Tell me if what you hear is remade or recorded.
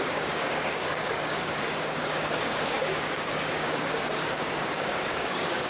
remade